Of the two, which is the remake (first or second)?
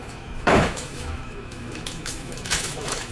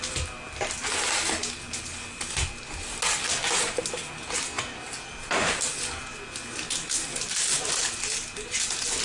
first